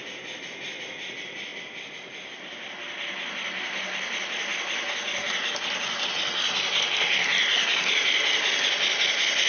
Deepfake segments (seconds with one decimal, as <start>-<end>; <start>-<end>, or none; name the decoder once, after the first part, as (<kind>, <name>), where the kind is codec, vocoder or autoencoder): none